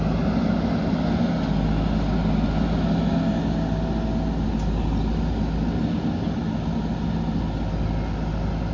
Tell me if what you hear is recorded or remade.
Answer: recorded